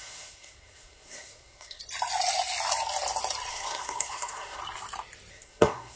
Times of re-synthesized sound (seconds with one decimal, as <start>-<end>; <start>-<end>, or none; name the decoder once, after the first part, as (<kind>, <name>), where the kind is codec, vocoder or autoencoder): 0.0-1.8 (codec, SNAC); 3.5-4.6; 5.3-6.0